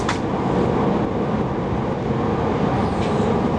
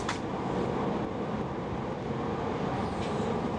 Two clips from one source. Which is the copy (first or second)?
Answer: second